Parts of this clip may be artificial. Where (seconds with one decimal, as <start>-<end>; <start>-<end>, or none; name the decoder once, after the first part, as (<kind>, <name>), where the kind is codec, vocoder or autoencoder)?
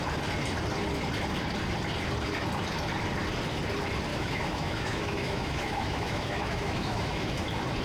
4.1-7.3 (autoencoder, DAC-VAE)